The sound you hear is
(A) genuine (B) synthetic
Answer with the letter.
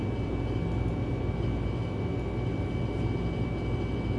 A